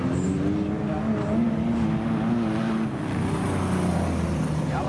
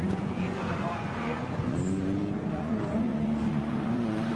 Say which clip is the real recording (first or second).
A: first